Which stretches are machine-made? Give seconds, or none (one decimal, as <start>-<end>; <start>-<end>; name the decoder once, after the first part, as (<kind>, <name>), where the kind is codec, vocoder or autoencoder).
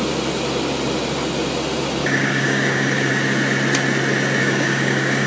2.0-3.1 (codec, DAC); 4.4-5.3